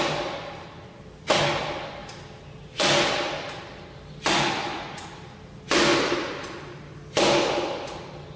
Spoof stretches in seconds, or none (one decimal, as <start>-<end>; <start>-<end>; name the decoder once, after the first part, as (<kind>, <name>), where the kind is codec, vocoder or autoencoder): none